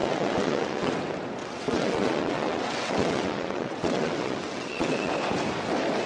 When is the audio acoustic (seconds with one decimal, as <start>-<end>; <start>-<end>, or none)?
0.9-1.4; 5.1-6.1